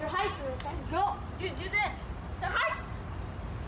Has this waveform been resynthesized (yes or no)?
no